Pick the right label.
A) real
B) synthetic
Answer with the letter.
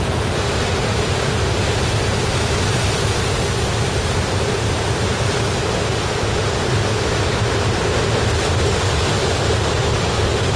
A